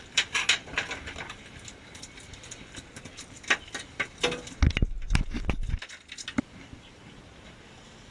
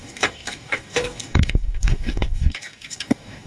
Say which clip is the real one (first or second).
first